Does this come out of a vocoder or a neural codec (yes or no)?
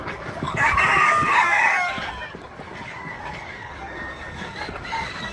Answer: yes